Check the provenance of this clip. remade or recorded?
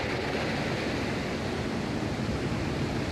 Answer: recorded